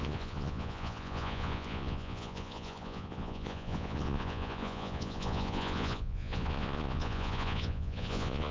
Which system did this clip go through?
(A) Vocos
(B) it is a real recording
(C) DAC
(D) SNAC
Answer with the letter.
A